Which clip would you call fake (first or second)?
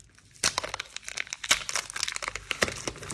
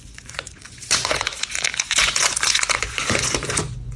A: second